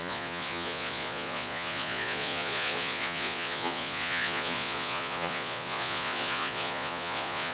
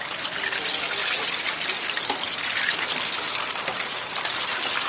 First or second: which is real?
second